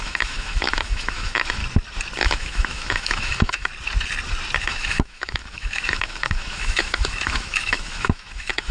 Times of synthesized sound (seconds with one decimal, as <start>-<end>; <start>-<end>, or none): 0.0-1.6; 2.2-3.7; 4.6-8.7

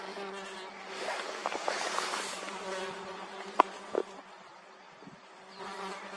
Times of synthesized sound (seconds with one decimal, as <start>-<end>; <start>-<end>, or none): none

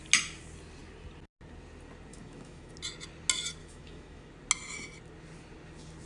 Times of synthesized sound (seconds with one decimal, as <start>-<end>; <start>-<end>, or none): 2.1-2.7; 3.6-4.3

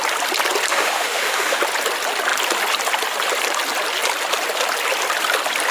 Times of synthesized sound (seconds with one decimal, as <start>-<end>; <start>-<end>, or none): 0.7-1.6